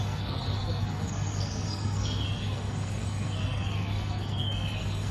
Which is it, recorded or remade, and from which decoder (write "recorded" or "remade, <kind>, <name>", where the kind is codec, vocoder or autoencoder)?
remade, codec, SNAC